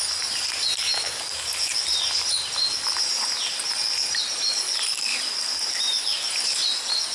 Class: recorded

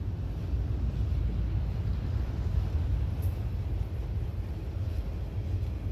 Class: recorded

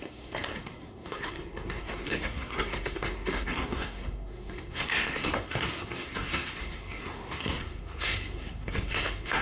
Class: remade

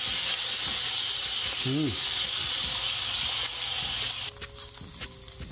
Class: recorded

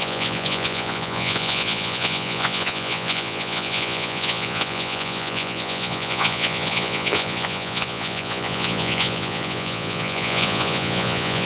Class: remade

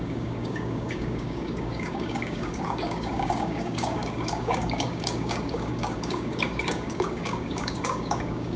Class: remade